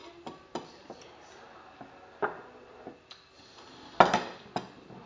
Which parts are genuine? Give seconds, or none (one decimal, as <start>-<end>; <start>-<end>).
0.0-5.1